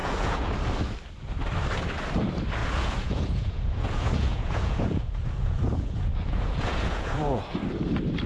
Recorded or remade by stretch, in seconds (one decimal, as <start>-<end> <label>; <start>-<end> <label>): 0.0-0.5 remade; 0.5-2.6 recorded; 2.6-7.4 remade; 7.4-8.3 recorded

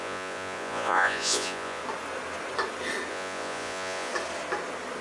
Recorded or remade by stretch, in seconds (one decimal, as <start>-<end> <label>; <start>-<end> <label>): 0.0-1.8 remade; 1.8-3.1 recorded; 3.1-4.1 remade; 4.1-5.0 recorded